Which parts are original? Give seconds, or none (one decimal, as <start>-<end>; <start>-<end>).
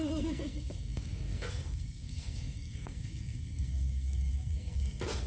none